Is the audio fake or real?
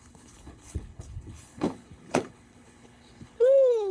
fake